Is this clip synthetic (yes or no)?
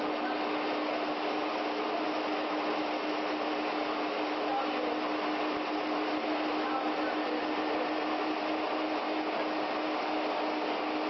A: no